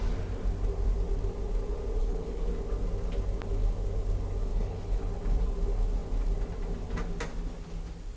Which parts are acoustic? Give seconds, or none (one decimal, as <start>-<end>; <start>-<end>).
0.0-2.0; 2.5-4.5; 5.0-8.2